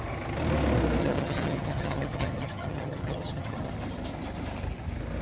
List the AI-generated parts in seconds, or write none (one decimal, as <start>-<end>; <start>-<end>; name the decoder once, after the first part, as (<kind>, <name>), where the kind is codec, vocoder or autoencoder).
1.0-3.7 (vocoder, HiFi-GAN)